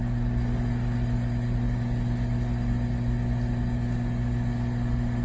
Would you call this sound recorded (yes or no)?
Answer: yes